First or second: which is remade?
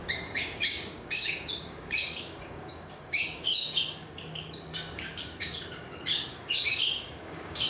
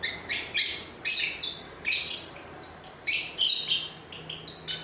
first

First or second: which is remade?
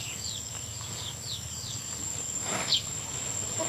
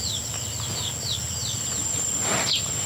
first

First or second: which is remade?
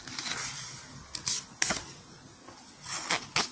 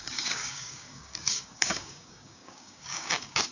second